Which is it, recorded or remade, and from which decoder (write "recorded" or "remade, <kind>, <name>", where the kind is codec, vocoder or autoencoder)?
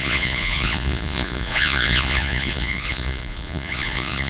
remade, vocoder, Vocos